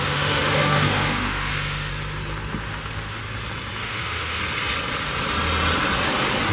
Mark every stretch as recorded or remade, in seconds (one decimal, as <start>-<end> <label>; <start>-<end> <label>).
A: 0.0-1.9 remade; 1.9-2.6 recorded; 2.6-3.2 remade; 3.2-3.8 recorded; 3.8-4.4 remade; 4.4-6.5 recorded